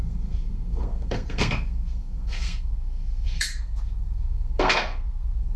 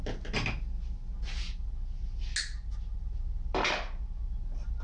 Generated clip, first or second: first